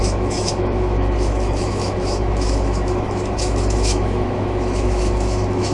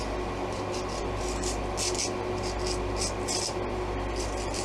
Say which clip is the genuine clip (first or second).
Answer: second